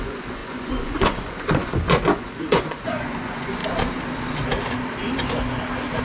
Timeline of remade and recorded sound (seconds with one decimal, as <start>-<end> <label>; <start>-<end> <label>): 0.0-3.6 remade; 3.6-6.0 recorded